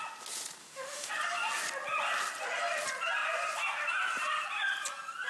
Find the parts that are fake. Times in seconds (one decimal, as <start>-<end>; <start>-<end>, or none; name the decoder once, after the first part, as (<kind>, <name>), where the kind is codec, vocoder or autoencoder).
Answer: 0.6-1.1 (autoencoder, DAC-VAE)